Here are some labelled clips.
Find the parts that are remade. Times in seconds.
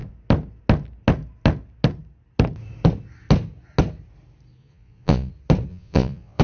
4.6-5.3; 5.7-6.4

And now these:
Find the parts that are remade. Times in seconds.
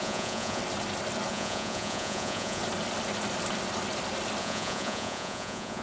0.0-0.6; 1.3-2.6; 4.4-5.8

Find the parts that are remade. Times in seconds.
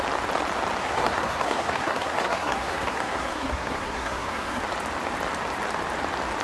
0.8-4.6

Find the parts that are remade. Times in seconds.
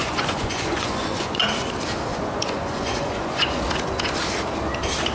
0.0-1.4; 2.1-3.6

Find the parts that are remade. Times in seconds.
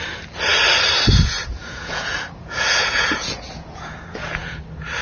1.6-4.6